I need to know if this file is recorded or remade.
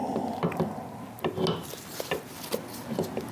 recorded